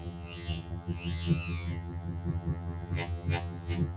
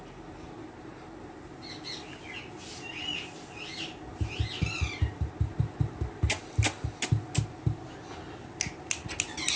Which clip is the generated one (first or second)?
first